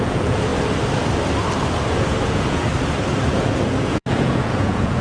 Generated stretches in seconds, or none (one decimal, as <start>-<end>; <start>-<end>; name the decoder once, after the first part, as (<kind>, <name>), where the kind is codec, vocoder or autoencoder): 0.0-0.5 (vocoder, Vocos); 2.3-2.7; 3.3-5.0